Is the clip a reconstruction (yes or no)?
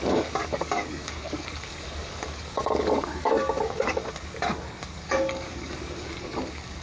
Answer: yes